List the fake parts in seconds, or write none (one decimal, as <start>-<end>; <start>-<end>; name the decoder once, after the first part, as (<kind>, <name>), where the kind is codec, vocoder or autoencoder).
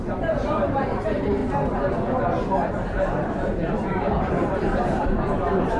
0.0-1.4 (vocoder, BigVGAN v2); 2.7-5.8